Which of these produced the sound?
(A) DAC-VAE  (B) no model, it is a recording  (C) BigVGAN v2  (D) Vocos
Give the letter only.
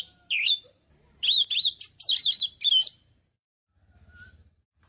C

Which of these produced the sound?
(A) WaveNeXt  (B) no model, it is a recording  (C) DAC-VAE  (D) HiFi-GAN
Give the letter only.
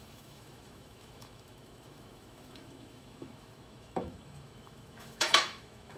C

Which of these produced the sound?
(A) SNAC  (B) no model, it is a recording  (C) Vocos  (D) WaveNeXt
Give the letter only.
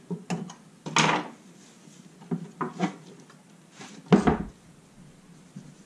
B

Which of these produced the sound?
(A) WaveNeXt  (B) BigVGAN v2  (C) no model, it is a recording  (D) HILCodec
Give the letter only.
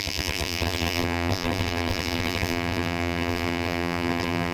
B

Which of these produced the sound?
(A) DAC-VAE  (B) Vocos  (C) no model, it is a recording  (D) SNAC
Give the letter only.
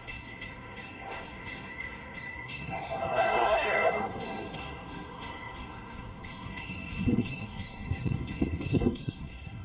D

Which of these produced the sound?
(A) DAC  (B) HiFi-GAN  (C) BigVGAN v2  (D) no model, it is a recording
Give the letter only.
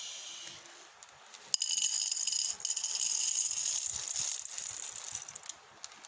D